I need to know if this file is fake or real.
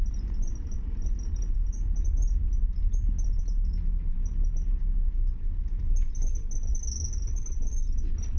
real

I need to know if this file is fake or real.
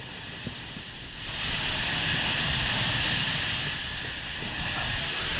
real